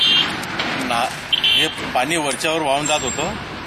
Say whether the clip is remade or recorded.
recorded